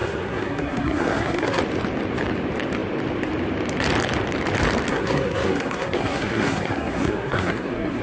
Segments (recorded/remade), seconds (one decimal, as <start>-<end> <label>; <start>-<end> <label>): 0.0-1.6 remade; 1.6-4.9 recorded; 4.9-8.0 remade